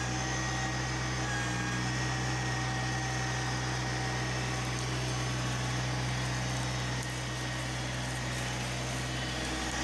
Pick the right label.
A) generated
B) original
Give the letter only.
B